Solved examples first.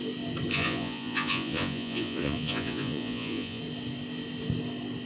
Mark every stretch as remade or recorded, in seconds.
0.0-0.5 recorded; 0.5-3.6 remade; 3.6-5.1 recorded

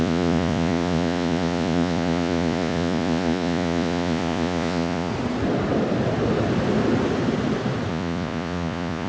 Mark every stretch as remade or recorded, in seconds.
0.0-5.1 remade; 5.1-7.9 recorded; 7.9-9.1 remade

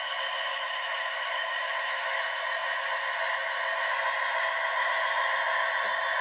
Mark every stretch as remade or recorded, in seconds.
0.0-0.5 recorded; 0.5-2.2 remade; 2.2-6.2 recorded

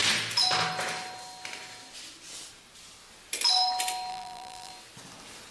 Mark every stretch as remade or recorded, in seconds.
0.0-4.1 recorded; 4.1-4.7 remade; 4.7-5.5 recorded

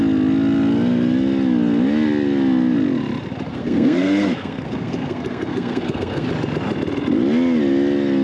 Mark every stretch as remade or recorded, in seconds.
0.0-3.5 recorded; 3.5-6.3 remade; 6.3-8.2 recorded